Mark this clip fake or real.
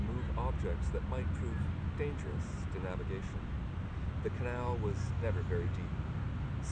real